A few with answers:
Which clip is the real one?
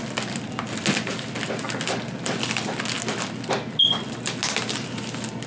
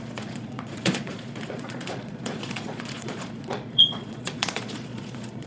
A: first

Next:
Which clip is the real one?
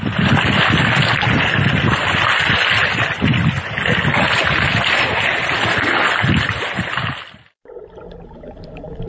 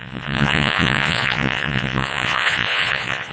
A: first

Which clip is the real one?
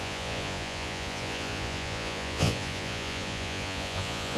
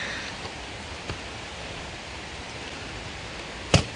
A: second